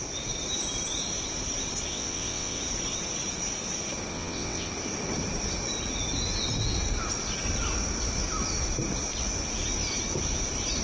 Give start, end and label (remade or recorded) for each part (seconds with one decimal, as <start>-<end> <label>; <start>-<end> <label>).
0.0-1.9 recorded; 1.9-2.6 remade; 2.6-4.1 recorded; 4.1-4.7 remade; 4.7-10.8 recorded